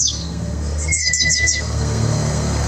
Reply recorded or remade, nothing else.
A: remade